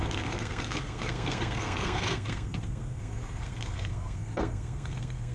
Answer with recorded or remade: remade